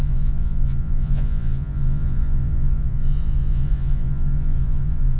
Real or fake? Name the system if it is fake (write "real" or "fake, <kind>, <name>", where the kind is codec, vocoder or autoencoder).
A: fake, vocoder, Vocos